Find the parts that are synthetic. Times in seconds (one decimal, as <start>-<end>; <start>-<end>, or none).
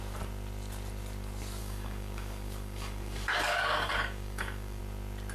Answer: 1.6-4.8